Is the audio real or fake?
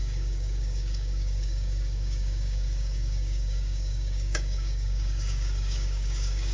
fake